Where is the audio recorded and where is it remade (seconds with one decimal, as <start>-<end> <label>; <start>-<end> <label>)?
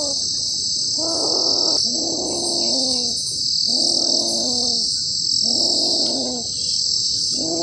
0.0-7.6 recorded